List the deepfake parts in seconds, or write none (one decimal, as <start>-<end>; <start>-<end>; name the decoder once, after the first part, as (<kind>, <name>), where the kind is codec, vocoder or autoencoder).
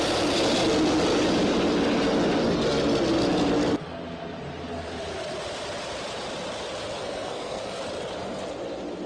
7.0-7.8 (codec, SNAC)